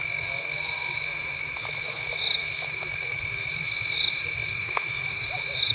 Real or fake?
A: fake